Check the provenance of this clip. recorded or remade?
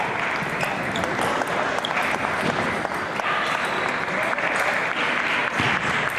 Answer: recorded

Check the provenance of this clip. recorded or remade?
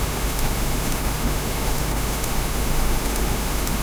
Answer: remade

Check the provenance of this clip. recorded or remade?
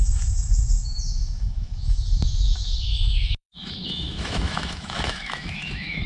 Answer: remade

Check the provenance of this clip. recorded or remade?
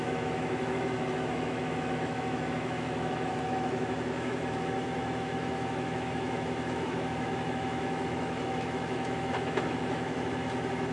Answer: remade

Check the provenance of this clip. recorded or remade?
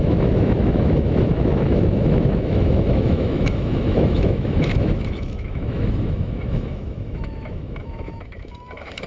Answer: remade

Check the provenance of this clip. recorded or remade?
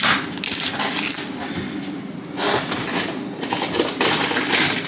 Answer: recorded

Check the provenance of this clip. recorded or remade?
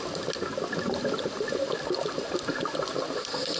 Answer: recorded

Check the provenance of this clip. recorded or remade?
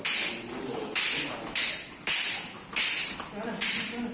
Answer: recorded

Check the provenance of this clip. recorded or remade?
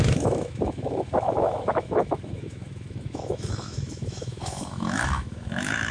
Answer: remade